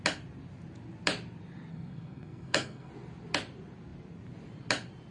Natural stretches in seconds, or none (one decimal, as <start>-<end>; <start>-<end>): 0.0-1.7; 2.9-5.1